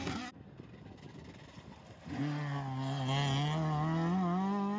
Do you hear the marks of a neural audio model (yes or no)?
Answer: no